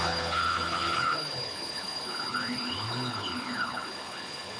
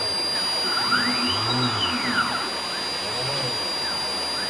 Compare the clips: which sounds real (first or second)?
second